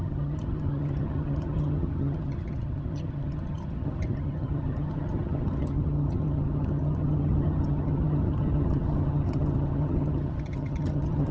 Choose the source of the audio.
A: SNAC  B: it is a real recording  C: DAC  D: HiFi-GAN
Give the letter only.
D